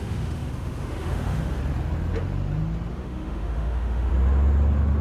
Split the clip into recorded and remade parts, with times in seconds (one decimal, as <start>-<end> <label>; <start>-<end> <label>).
0.0-1.6 remade; 1.6-2.9 recorded; 2.9-4.1 remade; 4.1-5.0 recorded